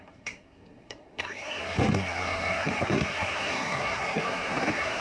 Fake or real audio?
fake